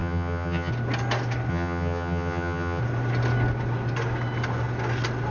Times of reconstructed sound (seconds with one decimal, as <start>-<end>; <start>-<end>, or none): 0.0-0.7; 1.5-2.8